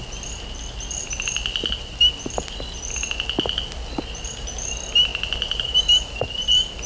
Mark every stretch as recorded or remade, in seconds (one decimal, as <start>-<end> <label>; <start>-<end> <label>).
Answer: 0.0-6.9 recorded

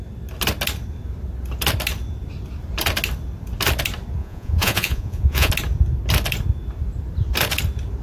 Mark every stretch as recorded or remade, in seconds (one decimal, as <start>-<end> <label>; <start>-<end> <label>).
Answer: 0.0-4.2 recorded; 4.2-5.5 remade; 5.5-8.0 recorded

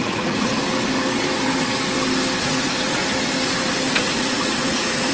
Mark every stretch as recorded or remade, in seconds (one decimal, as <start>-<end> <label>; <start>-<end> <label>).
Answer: 0.0-0.6 remade; 0.6-2.4 recorded; 2.4-3.0 remade; 3.0-4.0 recorded; 4.0-5.1 remade

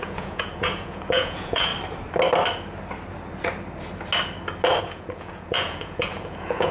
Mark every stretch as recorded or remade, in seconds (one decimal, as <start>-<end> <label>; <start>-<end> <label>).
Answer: 0.0-1.7 remade; 1.7-4.8 recorded; 4.8-6.7 remade

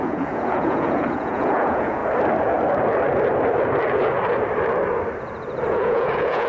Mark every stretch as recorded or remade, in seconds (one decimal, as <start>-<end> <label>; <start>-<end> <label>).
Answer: 0.0-2.0 remade; 2.0-5.7 recorded; 5.7-6.5 remade